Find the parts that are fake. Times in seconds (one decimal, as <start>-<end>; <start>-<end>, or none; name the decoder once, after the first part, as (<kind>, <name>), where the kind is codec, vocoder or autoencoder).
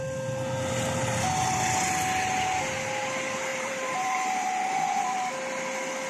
3.5-5.3 (vocoder, BigVGAN v2)